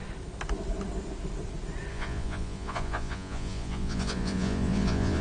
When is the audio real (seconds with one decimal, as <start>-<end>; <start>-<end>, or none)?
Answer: 0.0-1.9